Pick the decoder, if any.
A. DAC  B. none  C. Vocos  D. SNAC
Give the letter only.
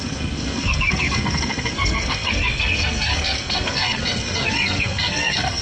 D